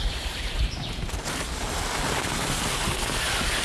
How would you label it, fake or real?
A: real